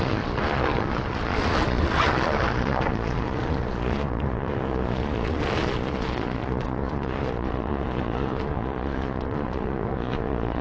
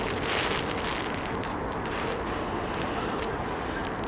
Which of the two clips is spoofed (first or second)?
first